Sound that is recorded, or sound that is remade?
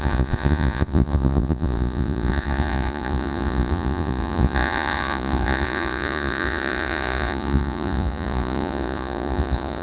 remade